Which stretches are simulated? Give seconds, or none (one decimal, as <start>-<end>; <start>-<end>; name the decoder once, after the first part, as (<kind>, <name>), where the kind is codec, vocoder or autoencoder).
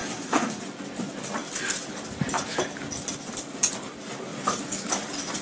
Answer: 0.0-0.6 (codec, SNAC)